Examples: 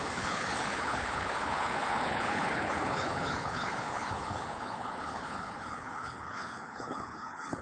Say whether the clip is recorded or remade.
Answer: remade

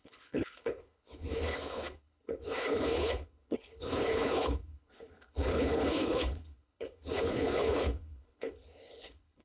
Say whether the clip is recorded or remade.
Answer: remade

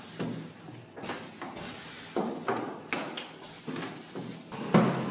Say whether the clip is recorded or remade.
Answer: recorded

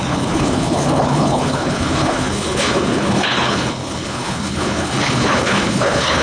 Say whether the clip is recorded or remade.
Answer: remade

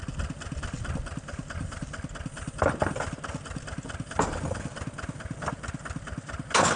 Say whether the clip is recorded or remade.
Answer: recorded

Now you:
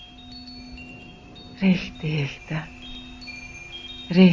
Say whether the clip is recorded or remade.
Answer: recorded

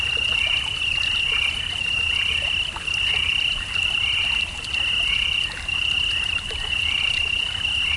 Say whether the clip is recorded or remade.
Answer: recorded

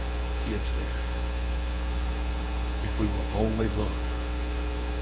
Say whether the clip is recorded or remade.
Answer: remade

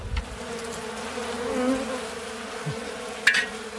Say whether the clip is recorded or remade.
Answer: recorded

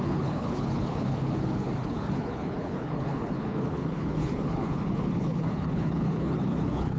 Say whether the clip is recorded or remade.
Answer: remade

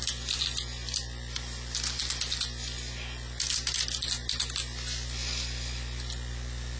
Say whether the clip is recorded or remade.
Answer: recorded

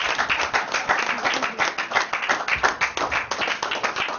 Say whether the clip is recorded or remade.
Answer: recorded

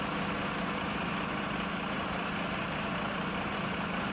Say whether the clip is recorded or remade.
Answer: recorded